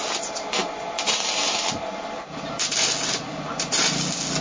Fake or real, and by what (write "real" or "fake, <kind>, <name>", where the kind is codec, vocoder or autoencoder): real